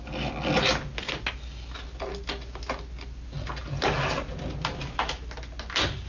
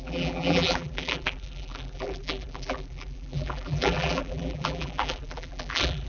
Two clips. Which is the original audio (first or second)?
first